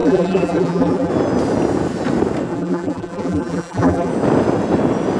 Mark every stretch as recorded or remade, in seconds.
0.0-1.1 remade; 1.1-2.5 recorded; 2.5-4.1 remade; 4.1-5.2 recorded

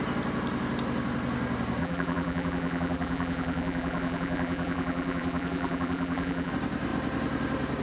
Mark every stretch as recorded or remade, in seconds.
0.0-1.8 recorded; 1.8-6.5 remade; 6.5-7.8 recorded